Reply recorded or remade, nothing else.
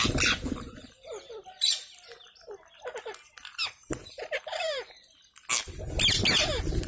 recorded